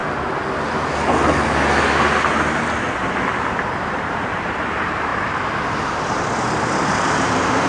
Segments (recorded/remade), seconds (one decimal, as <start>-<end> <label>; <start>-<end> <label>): 0.0-3.8 recorded; 3.8-7.7 remade

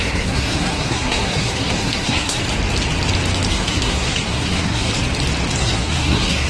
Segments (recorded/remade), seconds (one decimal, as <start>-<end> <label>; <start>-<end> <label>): 0.0-2.4 remade; 2.4-3.5 recorded; 3.5-4.9 remade; 4.9-5.6 recorded; 5.6-6.5 remade